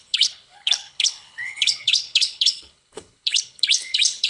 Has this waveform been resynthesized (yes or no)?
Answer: yes